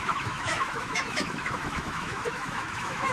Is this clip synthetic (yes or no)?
yes